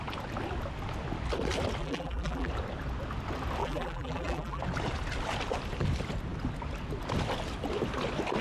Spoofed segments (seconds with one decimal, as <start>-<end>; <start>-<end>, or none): 1.8-2.5; 3.6-4.6